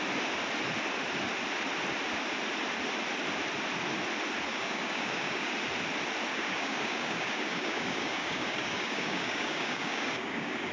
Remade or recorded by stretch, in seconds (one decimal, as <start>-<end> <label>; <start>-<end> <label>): 0.0-4.5 recorded; 4.5-5.5 remade; 5.5-6.3 recorded; 6.3-10.7 remade